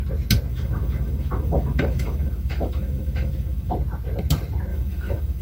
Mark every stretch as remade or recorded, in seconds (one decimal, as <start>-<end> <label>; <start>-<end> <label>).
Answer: 0.0-0.5 recorded; 0.5-3.7 remade; 3.7-4.7 recorded; 4.7-5.4 remade